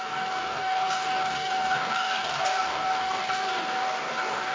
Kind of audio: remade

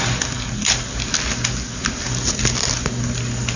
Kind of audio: recorded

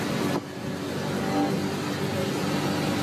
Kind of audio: recorded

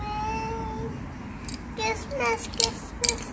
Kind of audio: recorded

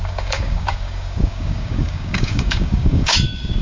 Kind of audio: remade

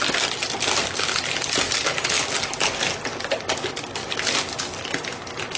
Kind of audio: recorded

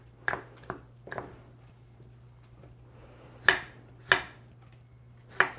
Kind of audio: recorded